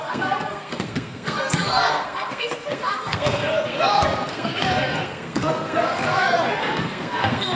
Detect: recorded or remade remade